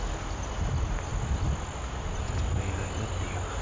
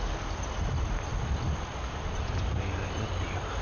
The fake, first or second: second